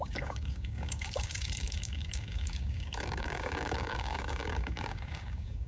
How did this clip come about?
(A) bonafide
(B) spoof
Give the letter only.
B